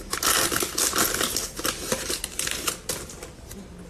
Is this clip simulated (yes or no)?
no